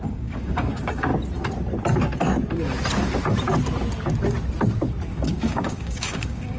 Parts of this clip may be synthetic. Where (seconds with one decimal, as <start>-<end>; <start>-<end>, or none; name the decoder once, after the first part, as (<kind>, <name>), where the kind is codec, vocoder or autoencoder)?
0.0-1.1 (codec, DAC); 5.1-6.6